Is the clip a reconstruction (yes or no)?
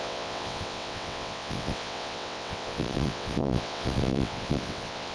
yes